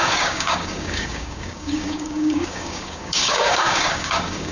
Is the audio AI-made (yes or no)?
yes